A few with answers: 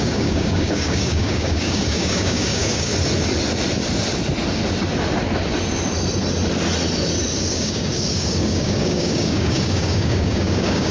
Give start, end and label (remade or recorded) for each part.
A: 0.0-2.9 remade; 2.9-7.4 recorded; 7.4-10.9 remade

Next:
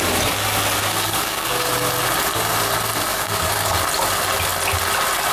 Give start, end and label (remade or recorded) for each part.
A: 0.0-0.8 recorded; 0.8-1.7 remade; 1.7-3.1 recorded; 3.1-3.7 remade; 3.7-5.3 recorded